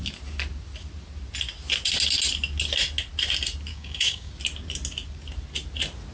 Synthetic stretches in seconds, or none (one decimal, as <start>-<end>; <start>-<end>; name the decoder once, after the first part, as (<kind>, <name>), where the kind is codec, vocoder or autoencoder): 3.7-4.3 (codec, DAC)